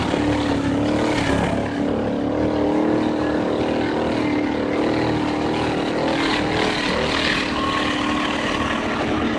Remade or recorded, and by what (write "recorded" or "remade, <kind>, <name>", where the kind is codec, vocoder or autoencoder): recorded